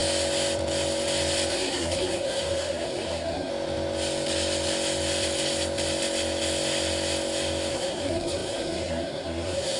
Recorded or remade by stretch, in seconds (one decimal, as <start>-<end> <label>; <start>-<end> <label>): 0.0-1.5 recorded; 1.5-3.5 remade; 3.5-7.7 recorded; 7.7-9.8 remade

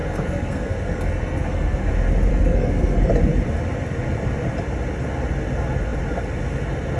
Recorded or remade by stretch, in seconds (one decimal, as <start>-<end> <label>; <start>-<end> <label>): 0.0-1.9 remade; 1.9-2.3 recorded; 2.3-3.1 remade; 3.1-7.0 recorded

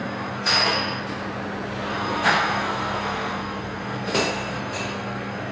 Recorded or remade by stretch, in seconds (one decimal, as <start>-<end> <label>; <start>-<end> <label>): 0.0-1.0 remade; 1.0-1.9 recorded; 1.9-5.5 remade